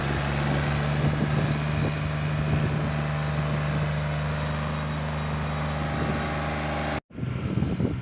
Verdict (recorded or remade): recorded